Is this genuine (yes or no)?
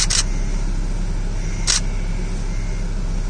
yes